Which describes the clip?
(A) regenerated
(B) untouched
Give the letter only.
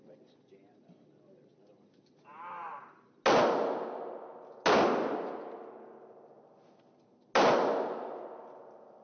B